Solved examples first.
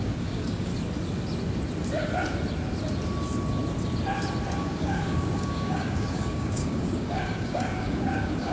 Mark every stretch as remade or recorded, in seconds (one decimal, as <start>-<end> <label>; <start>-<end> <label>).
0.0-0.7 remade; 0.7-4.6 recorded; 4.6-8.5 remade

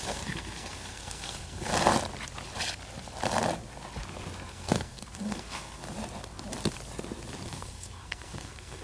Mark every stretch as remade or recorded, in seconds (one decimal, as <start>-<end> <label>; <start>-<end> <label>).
0.0-1.7 remade; 1.7-4.5 recorded; 4.5-5.8 remade; 5.8-7.5 recorded; 7.5-8.8 remade

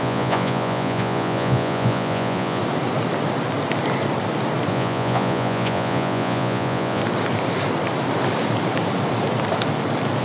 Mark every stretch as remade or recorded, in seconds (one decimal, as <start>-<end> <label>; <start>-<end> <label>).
0.0-2.6 remade; 2.6-4.7 recorded; 4.7-7.0 remade; 7.0-10.2 recorded

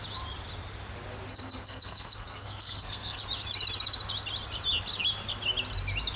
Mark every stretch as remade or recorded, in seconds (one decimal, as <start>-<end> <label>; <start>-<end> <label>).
0.0-1.3 recorded; 1.3-3.2 remade; 3.2-6.2 recorded